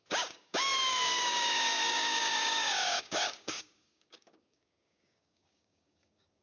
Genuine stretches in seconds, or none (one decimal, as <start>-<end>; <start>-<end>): none